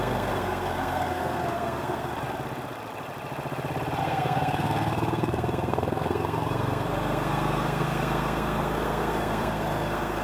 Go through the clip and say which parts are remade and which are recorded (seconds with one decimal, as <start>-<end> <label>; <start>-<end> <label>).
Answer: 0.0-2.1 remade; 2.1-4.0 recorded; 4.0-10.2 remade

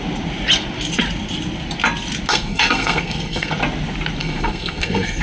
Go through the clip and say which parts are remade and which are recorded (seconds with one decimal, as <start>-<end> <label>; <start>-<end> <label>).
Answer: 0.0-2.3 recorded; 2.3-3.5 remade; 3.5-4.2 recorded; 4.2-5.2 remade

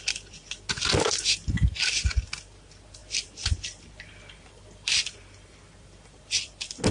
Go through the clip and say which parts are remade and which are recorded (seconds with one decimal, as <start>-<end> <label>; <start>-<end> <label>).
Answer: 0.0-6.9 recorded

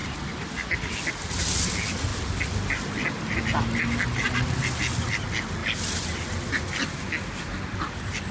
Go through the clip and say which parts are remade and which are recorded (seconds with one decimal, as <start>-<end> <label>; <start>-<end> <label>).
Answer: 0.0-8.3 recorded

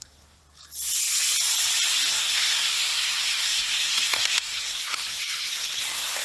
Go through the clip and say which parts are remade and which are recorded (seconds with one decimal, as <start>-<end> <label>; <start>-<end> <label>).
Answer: 0.0-0.4 remade; 0.4-2.1 recorded; 2.1-6.2 remade

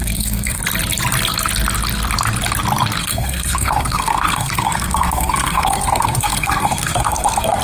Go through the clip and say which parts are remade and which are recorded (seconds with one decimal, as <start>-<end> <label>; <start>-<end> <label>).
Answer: 0.0-0.6 remade; 0.6-3.0 recorded; 3.0-7.6 remade

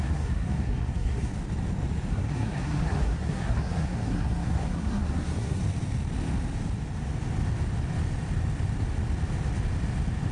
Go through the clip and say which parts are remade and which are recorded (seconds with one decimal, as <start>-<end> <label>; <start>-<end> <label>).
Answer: 0.0-1.3 remade; 1.3-2.1 recorded; 2.1-5.6 remade; 5.6-10.3 recorded

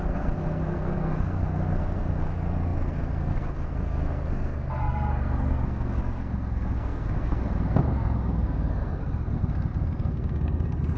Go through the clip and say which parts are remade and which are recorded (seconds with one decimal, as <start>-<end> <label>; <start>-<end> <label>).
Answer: 0.0-11.0 remade